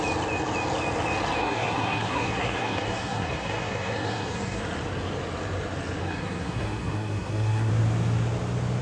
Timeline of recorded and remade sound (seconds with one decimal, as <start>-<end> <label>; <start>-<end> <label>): 0.0-1.4 recorded; 1.4-4.6 remade; 4.6-6.0 recorded; 6.0-7.7 remade; 7.7-8.8 recorded